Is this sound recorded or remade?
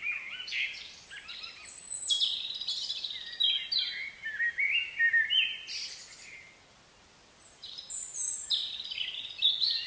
recorded